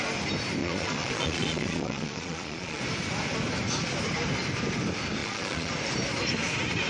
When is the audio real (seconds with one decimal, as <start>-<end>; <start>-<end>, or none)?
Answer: 0.0-0.6; 2.8-5.2; 5.7-6.9